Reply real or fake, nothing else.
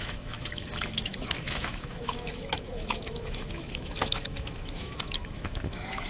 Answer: fake